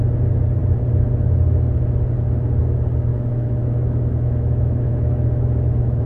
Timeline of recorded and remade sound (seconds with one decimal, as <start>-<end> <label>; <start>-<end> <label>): 0.0-3.1 recorded; 3.1-6.1 remade